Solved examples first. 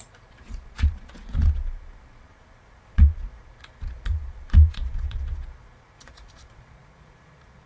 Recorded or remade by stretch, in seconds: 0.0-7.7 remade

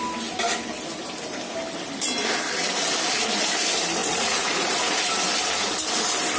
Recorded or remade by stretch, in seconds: 0.0-4.0 recorded; 4.0-5.1 remade; 5.1-6.4 recorded

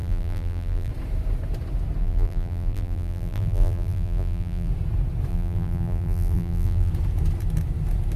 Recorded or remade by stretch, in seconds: 0.0-0.9 remade; 0.9-2.0 recorded; 2.0-4.7 remade; 4.7-5.3 recorded; 5.3-6.9 remade; 6.9-8.2 recorded